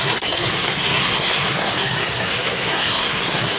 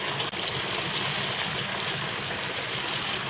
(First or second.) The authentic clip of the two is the second